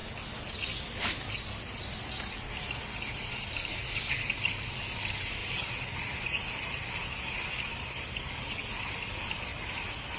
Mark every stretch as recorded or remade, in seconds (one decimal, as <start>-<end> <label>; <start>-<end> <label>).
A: 0.0-10.2 recorded